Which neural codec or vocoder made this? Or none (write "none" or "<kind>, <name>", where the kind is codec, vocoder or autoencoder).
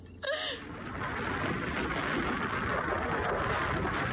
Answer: none